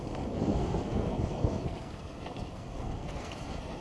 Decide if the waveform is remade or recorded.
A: remade